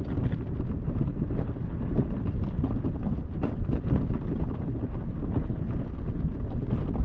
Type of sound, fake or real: real